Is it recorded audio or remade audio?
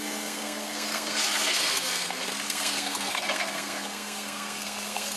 remade